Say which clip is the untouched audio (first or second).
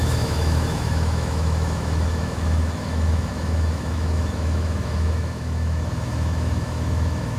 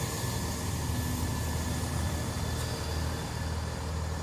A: second